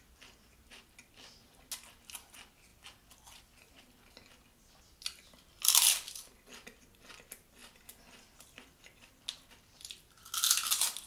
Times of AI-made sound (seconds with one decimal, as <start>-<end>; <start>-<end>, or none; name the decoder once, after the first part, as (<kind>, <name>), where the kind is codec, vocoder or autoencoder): 7.6-9.2 (vocoder, BigVGAN v2)

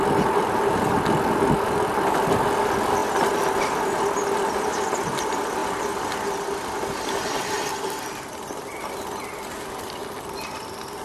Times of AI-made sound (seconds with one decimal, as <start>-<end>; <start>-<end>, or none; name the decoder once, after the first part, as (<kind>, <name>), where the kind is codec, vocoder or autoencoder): 0.0-3.0 (vocoder, BigVGAN v2); 4.6-5.6; 7.4-11.0

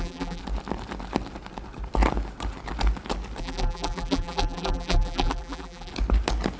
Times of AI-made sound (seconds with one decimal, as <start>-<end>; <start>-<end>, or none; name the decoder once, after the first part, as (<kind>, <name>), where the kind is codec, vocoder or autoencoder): 0.0-0.4 (vocoder, BigVGAN v2); 3.4-5.9

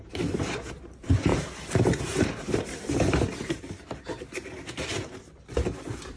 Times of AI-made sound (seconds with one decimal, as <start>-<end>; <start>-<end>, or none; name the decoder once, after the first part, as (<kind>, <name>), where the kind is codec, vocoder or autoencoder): 0.0-6.2 (vocoder, BigVGAN v2)

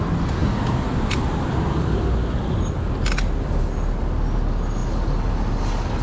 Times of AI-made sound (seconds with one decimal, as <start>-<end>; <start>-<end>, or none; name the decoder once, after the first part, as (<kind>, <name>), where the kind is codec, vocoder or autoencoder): none

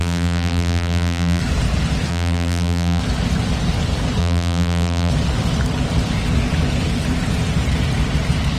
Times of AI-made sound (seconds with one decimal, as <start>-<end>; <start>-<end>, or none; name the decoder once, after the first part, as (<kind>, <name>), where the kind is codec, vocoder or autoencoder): 0.0-1.4 (vocoder, BigVGAN v2); 2.1-3.0; 4.2-5.1

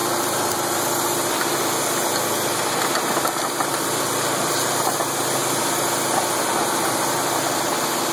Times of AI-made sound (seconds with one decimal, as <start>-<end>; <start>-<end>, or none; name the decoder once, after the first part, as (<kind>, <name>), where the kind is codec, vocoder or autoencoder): 0.0-2.5 (vocoder, BigVGAN v2); 3.4-5.4; 6.6-8.1